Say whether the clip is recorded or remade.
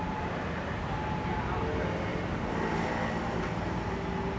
recorded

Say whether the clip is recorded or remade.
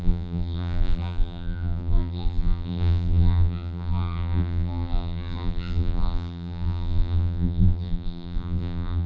remade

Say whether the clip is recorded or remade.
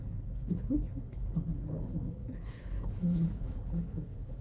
remade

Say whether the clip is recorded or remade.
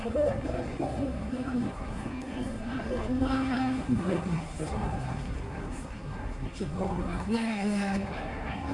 remade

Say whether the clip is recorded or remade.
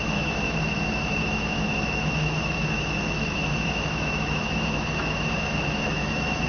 remade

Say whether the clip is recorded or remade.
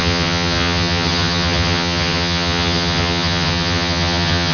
remade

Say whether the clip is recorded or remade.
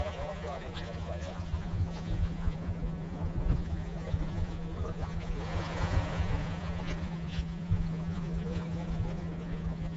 remade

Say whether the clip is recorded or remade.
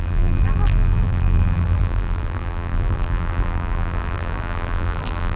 remade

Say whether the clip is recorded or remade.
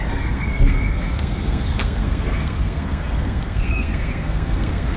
remade